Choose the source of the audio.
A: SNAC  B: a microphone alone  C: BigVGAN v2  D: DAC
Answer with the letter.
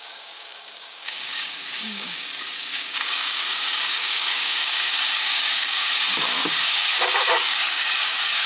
D